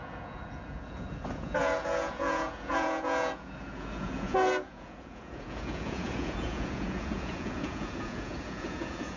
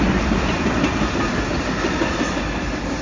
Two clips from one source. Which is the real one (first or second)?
second